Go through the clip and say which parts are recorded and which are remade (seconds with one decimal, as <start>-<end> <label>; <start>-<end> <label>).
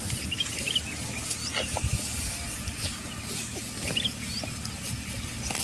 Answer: 0.0-5.6 recorded